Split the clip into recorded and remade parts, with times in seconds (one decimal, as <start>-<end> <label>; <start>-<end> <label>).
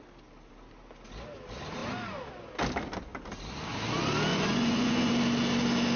0.0-4.3 recorded; 4.3-5.1 remade; 5.1-6.0 recorded